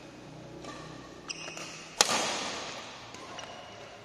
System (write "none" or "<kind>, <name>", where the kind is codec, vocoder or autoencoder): none